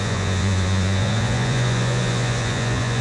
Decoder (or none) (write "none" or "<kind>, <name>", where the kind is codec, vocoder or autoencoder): vocoder, Vocos